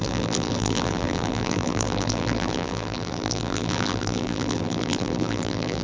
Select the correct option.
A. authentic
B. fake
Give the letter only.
B